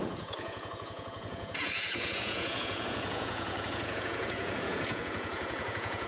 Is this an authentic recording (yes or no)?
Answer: no